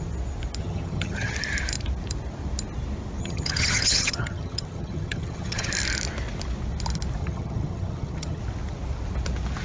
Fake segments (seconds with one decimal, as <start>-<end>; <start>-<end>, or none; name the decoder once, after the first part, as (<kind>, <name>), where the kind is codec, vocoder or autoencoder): 0.6-1.3 (vocoder, HiFi-GAN); 3.2-5.7; 7.2-8.4